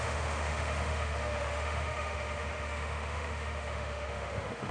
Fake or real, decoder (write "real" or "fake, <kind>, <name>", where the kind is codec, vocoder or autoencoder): fake, autoencoder, DAC-VAE